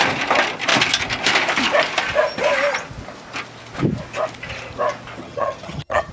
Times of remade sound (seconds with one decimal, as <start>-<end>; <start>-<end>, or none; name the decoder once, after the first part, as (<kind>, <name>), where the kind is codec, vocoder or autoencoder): 5.2-6.1 (vocoder, HiFi-GAN)